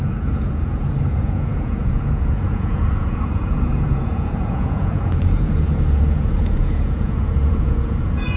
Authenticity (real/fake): fake